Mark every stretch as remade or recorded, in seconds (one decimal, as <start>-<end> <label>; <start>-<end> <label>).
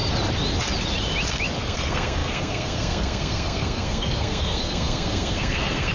0.0-1.6 recorded; 1.6-5.9 remade